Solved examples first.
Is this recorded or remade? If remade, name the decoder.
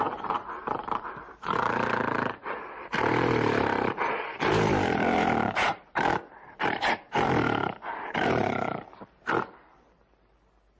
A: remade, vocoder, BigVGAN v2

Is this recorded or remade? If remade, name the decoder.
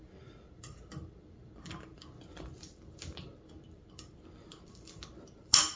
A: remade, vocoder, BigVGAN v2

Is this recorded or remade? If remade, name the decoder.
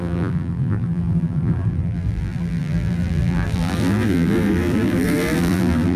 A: remade, vocoder, BigVGAN v2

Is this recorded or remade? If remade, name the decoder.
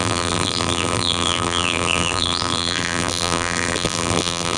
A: remade, vocoder, BigVGAN v2